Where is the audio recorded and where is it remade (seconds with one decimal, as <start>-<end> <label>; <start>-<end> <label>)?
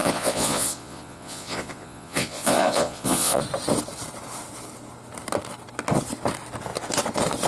0.0-3.4 remade; 3.4-7.5 recorded